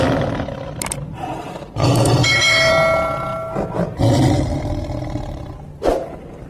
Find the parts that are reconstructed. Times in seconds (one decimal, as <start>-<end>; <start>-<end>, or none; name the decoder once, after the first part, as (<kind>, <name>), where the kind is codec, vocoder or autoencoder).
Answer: 1.8-2.7 (autoencoder, DAC-VAE)